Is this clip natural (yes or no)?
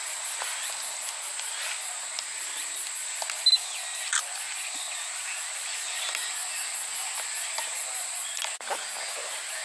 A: yes